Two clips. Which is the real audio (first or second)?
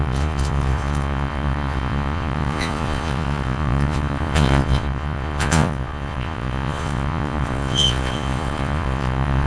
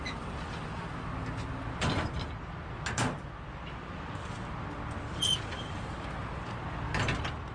second